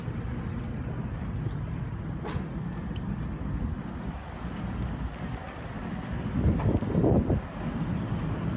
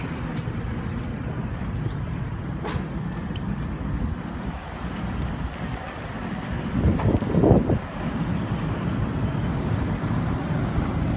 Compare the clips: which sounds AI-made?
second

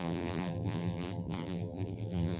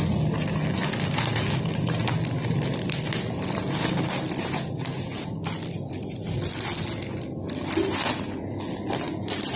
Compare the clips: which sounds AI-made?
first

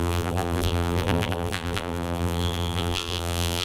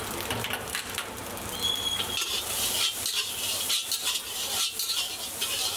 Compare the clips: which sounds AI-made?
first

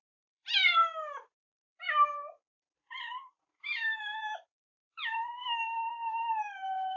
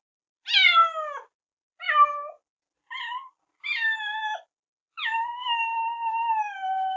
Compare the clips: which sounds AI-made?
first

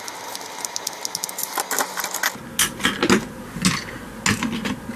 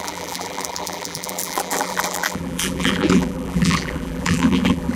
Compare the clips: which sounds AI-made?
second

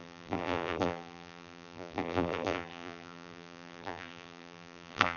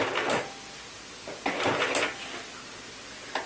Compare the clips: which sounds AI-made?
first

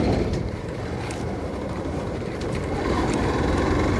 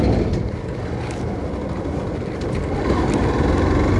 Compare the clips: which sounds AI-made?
first